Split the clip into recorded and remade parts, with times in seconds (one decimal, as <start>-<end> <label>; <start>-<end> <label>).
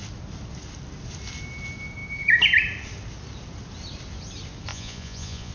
0.0-4.7 recorded; 4.7-5.5 remade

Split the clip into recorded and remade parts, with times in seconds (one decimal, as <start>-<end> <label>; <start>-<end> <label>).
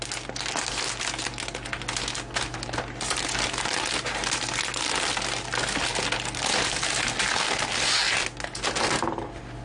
0.0-9.6 recorded